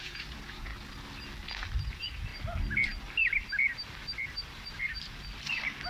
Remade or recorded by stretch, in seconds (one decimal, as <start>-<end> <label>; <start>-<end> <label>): 0.0-0.7 remade; 0.7-1.9 recorded; 1.9-2.3 remade; 2.3-5.9 recorded